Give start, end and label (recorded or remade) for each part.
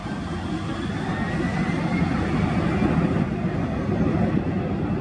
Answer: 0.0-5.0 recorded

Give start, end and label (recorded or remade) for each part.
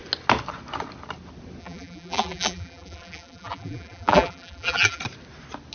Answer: 0.0-1.6 recorded; 1.6-5.0 remade; 5.0-5.7 recorded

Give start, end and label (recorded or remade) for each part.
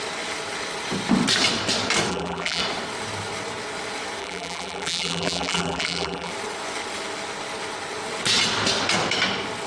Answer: 0.0-2.1 recorded; 2.1-2.6 remade; 2.6-4.2 recorded; 4.2-6.3 remade; 6.3-9.7 recorded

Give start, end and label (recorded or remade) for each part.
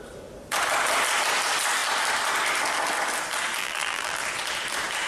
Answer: 0.0-3.6 recorded; 3.6-4.2 remade; 4.2-5.1 recorded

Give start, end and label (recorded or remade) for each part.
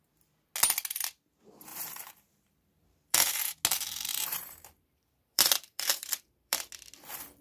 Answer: 0.0-1.7 recorded; 1.7-3.4 remade; 3.4-4.1 recorded; 4.1-6.7 remade; 6.7-7.4 recorded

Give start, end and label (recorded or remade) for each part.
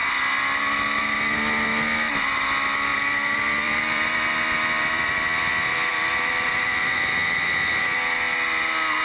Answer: 0.0-2.9 recorded; 2.9-5.5 remade; 5.5-5.9 recorded; 5.9-7.8 remade; 7.8-9.0 recorded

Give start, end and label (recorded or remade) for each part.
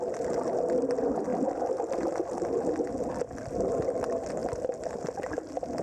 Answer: 0.0-5.8 recorded